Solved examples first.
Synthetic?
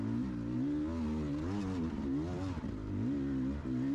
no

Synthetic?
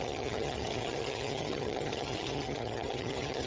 yes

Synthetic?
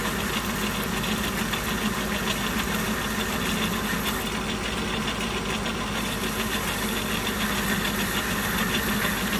no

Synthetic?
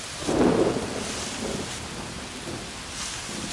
no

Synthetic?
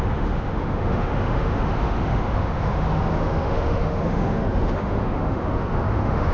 yes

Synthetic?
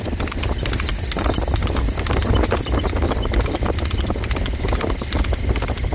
no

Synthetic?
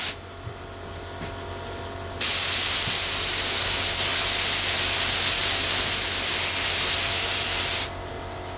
no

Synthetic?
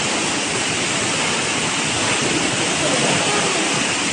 no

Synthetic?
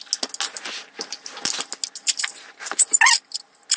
no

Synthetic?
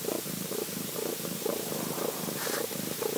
yes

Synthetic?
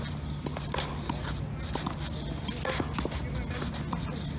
no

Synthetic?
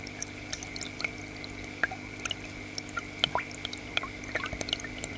no